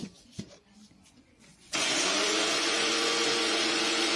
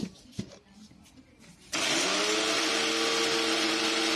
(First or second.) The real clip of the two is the second